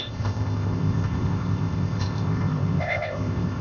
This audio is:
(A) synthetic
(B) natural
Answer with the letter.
A